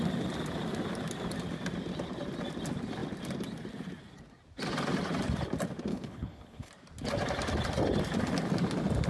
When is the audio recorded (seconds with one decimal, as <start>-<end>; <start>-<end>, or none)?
0.0-5.9; 6.7-9.1